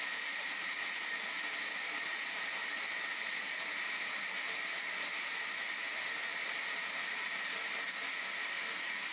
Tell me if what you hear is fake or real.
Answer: real